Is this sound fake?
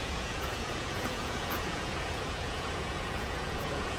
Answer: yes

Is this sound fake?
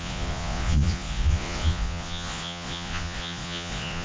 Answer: yes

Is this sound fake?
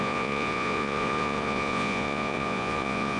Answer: yes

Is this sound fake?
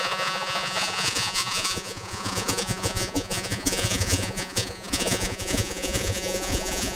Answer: yes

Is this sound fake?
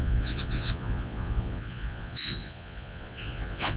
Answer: yes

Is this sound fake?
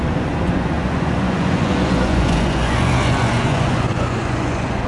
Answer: yes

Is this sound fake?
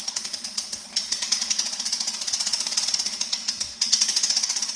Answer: yes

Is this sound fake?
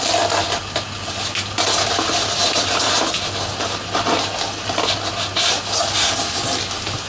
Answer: no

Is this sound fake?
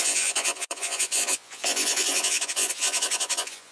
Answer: yes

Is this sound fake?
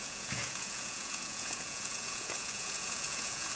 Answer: yes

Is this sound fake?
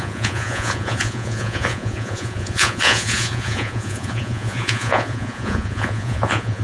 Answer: yes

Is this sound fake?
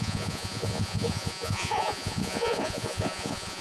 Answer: yes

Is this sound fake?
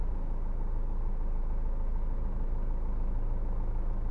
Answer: no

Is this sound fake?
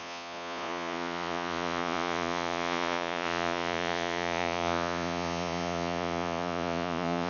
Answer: yes